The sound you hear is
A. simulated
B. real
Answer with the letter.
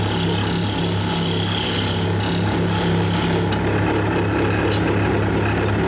B